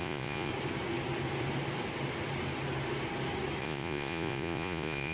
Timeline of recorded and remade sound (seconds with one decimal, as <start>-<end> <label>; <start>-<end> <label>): 0.0-0.5 remade; 0.5-3.6 recorded; 3.6-5.1 remade